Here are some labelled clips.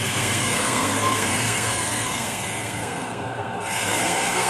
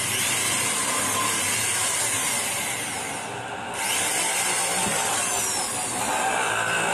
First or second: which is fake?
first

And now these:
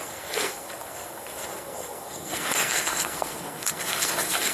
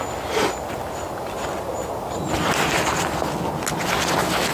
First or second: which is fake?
first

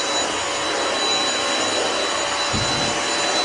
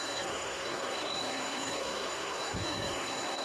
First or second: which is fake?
second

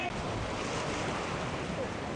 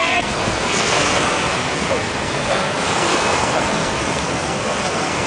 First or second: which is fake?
second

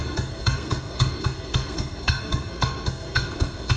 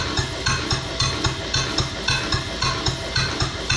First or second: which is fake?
first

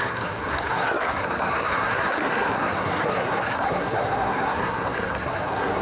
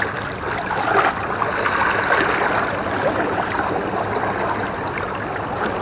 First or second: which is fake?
first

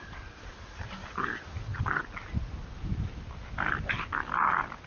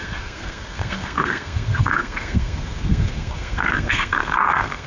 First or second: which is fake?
second